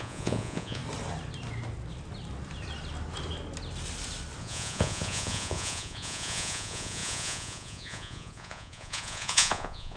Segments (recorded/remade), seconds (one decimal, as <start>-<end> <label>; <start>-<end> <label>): 0.0-0.8 remade; 0.8-4.4 recorded; 4.4-10.0 remade